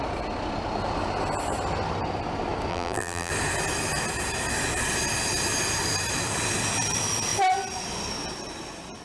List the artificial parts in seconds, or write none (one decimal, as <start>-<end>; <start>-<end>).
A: 2.7-3.3